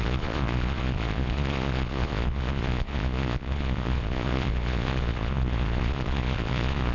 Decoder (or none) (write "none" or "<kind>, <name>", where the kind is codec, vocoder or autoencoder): vocoder, Vocos